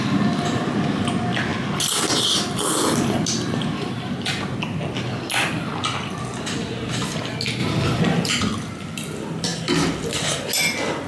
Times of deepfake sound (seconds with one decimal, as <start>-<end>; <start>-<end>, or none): 7.6-8.3; 9.5-10.5